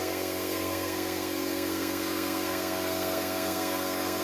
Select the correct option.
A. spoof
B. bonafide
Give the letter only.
A